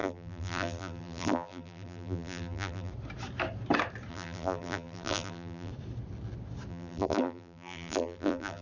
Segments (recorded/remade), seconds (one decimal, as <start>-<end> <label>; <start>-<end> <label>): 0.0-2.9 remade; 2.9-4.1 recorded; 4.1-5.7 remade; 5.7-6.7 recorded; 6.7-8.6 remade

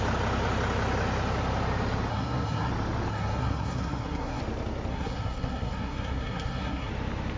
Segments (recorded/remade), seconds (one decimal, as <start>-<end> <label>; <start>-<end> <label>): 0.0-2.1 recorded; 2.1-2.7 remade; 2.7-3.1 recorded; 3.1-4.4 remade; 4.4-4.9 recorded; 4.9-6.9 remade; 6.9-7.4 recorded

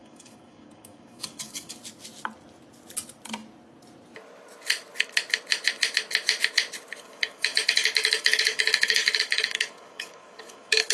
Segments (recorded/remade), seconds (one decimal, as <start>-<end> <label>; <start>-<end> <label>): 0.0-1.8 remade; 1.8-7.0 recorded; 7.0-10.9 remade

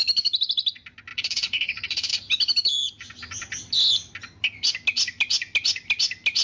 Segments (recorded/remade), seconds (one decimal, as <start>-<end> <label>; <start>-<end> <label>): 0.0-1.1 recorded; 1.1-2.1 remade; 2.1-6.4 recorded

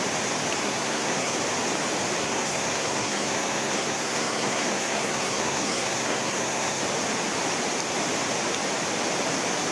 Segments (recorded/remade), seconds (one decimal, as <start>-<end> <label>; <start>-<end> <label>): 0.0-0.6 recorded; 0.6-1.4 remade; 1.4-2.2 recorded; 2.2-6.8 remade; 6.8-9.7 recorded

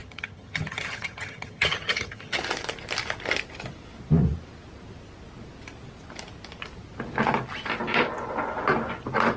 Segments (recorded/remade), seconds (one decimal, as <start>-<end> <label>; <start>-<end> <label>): 0.0-2.4 remade; 2.4-9.4 recorded

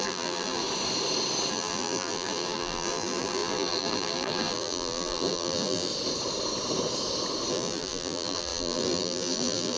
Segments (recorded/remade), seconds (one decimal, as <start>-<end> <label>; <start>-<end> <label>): 0.0-0.6 remade; 0.6-1.5 recorded; 1.5-5.9 remade; 5.9-7.5 recorded; 7.5-9.8 remade